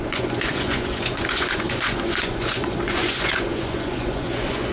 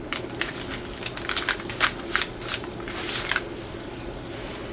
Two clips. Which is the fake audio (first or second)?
first